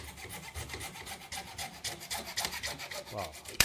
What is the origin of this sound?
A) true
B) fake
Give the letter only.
A